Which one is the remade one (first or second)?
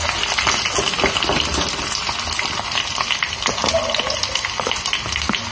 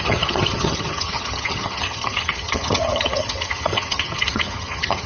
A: second